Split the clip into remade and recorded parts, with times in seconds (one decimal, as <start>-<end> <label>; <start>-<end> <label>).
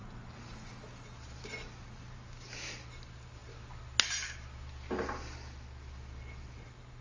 0.0-7.0 recorded